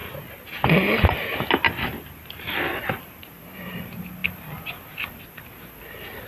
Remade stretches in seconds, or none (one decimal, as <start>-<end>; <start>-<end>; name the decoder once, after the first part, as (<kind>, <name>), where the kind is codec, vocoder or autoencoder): none